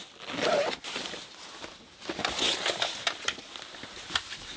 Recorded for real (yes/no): yes